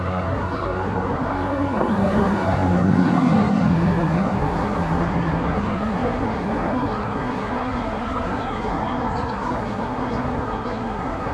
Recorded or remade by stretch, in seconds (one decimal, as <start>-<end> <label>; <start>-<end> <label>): 0.0-11.3 remade